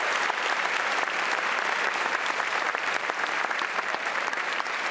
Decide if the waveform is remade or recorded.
remade